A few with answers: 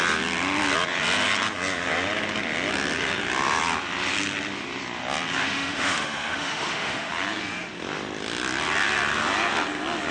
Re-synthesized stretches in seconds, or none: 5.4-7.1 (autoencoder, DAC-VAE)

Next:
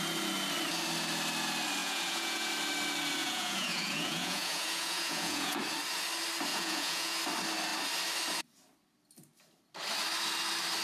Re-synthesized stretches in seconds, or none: 1.8-2.5 (vocoder, Vocos); 3.2-5.6; 6.5-7.2

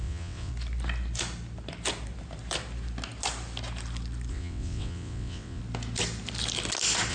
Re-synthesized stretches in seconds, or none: 0.0-0.5 (vocoder, WaveNeXt); 4.3-5.6

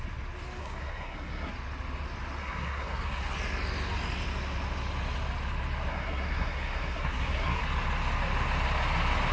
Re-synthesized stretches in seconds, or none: 0.6-1.5 (codec, SNAC); 2.4-3.2; 5.9-7.6

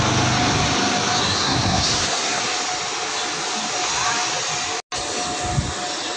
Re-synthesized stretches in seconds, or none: 1.2-2.4 (codec, SNAC)

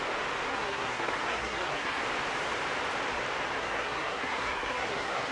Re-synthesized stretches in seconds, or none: 0.5-2.0 (codec, SNAC); 3.6-5.3